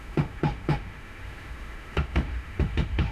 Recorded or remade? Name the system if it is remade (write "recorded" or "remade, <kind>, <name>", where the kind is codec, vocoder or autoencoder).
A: remade, autoencoder, DAC-VAE